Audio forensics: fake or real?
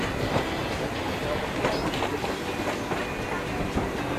real